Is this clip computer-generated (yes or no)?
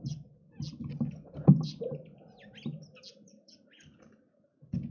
no